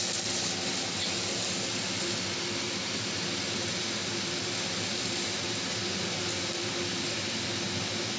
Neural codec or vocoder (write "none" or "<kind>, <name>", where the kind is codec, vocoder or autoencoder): none